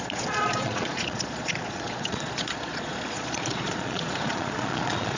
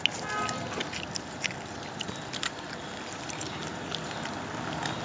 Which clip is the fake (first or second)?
first